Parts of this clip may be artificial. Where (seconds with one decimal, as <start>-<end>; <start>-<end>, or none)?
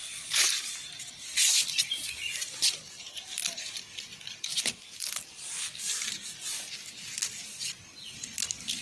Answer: 0.0-3.6